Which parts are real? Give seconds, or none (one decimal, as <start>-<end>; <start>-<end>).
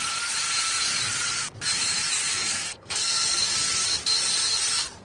0.0-2.3; 3.4-5.0